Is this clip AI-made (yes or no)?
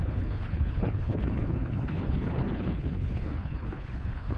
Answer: yes